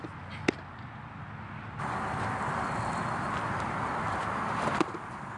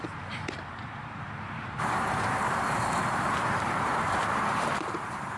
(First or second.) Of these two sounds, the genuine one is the first